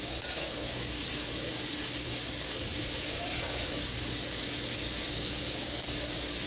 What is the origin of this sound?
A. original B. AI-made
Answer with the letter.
B